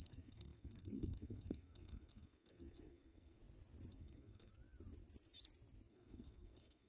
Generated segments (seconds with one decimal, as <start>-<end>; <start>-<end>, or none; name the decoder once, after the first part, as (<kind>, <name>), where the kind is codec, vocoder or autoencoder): 0.0-3.4 (codec, SNAC); 3.9-4.5; 5.9-6.9